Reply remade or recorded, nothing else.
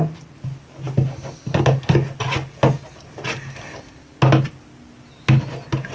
recorded